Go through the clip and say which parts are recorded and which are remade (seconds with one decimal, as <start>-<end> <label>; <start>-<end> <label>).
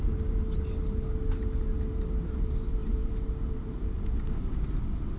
0.0-5.2 recorded